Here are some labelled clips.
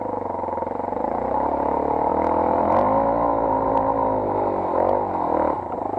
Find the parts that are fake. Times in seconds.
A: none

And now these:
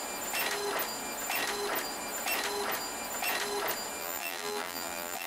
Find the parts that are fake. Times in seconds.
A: 4.0-5.3 (vocoder, BigVGAN v2)